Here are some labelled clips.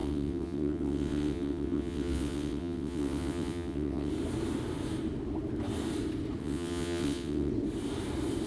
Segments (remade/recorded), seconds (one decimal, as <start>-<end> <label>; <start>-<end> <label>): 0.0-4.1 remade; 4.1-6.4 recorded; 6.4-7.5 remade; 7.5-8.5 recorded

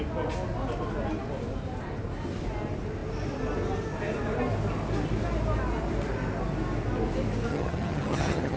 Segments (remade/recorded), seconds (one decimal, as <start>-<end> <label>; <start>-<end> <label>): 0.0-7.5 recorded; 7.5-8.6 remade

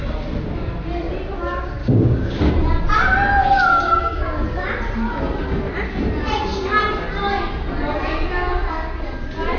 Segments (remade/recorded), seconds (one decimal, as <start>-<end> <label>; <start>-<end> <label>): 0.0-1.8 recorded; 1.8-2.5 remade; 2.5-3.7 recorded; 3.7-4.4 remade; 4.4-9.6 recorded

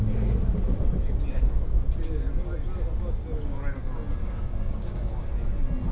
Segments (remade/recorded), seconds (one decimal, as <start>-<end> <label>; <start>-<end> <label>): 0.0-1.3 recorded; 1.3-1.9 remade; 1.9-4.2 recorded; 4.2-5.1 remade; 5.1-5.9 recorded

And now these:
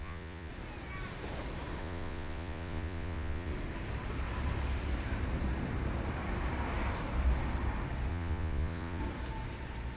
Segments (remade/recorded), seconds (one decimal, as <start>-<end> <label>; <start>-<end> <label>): 0.0-0.5 remade; 0.5-1.8 recorded; 1.8-3.5 remade; 3.5-8.1 recorded; 8.1-9.0 remade; 9.0-10.0 recorded

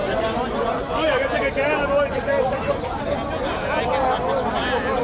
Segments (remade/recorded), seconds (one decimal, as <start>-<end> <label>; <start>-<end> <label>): 0.0-5.0 recorded